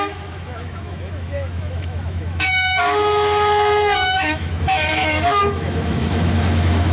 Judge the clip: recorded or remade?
remade